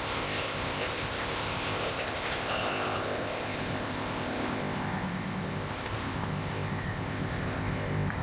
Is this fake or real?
fake